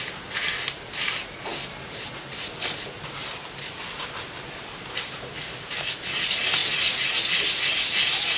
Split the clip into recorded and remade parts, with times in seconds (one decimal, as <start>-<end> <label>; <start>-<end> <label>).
0.0-8.4 recorded